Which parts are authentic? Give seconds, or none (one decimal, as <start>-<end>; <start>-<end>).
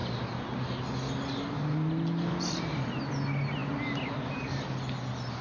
0.0-5.4